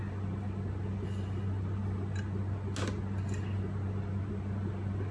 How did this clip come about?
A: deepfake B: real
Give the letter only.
B